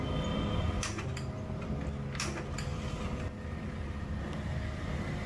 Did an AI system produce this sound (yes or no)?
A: no